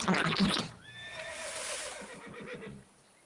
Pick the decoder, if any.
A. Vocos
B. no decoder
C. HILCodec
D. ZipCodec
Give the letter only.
B